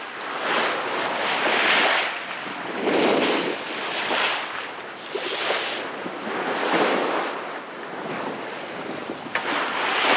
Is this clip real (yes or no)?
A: yes